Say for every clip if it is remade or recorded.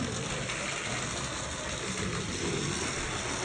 recorded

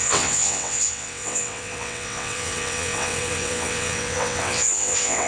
remade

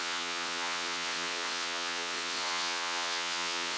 remade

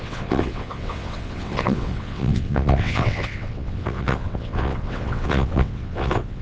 remade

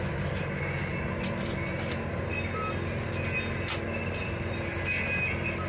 recorded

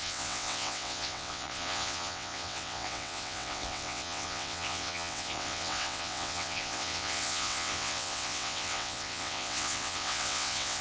remade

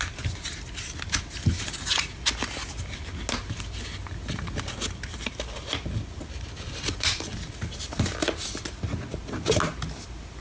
recorded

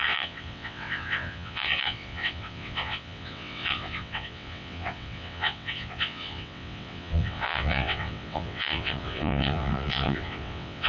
remade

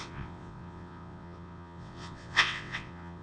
remade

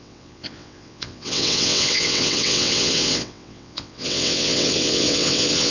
remade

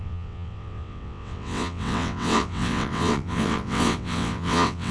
remade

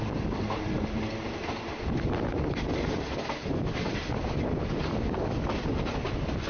recorded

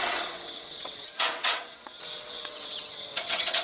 remade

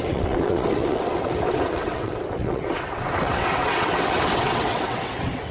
remade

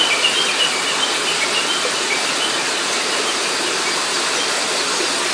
recorded